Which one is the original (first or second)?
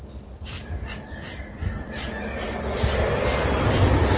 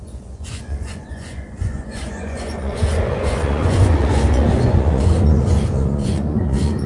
first